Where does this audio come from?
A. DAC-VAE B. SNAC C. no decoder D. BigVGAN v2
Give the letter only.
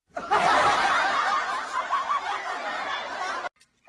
C